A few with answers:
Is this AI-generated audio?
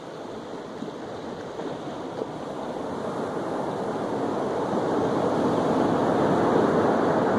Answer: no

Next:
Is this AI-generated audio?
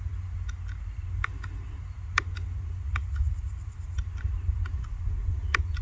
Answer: no